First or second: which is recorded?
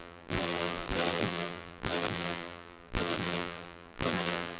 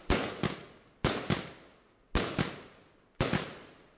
second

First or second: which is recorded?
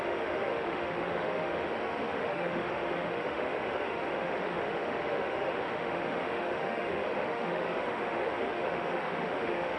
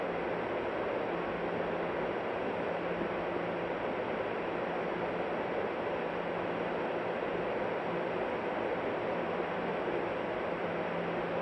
second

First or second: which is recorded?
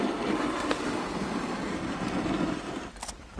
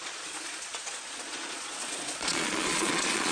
first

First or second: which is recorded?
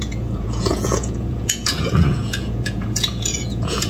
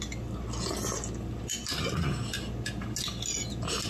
second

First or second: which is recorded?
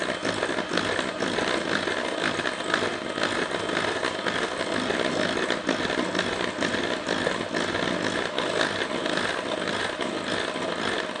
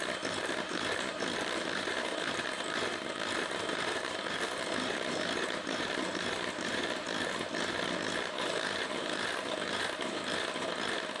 first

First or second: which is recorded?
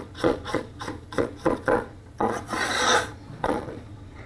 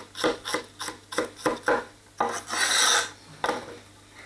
second